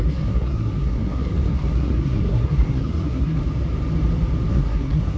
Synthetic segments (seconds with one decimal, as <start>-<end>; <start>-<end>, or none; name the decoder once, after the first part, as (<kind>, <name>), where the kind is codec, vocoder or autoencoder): 0.0-3.4 (codec, SNAC); 4.5-5.2